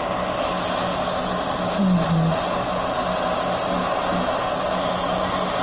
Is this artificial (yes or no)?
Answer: no